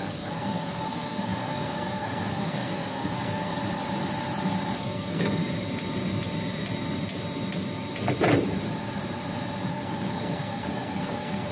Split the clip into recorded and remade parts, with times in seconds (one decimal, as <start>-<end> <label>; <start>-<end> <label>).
0.0-3.5 remade; 3.5-4.8 recorded; 4.8-5.4 remade; 5.4-9.7 recorded; 9.7-11.5 remade